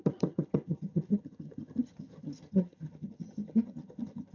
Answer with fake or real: fake